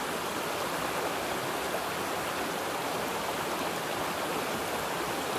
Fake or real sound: real